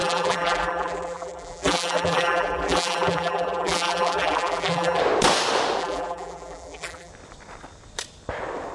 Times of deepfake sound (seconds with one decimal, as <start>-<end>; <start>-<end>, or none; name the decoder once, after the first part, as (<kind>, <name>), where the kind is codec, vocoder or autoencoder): 0.0-5.0 (vocoder, BigVGAN v2); 5.8-7.1